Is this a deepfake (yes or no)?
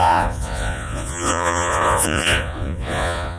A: yes